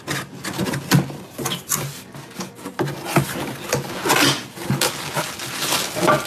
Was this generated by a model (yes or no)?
no